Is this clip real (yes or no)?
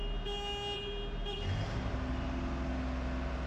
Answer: yes